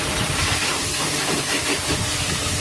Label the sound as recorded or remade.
remade